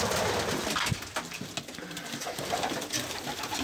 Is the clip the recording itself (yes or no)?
yes